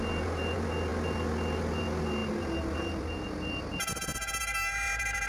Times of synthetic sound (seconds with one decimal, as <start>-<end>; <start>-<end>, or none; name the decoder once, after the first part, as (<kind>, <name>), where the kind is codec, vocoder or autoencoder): none